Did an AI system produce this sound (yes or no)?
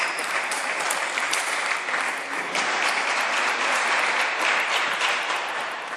yes